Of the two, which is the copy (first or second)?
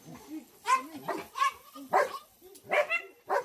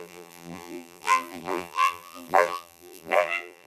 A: second